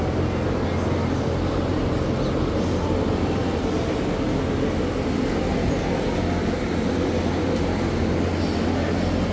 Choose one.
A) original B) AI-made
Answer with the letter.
A